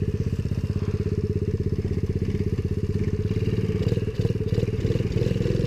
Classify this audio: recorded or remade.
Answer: recorded